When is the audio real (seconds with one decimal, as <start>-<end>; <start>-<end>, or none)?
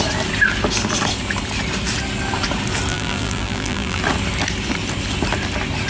0.0-2.9; 4.0-5.9